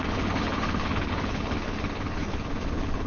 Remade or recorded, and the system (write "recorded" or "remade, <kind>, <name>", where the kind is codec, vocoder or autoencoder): remade, codec, HILCodec